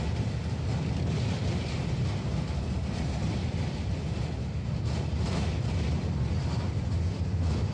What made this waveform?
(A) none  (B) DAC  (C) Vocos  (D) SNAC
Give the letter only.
A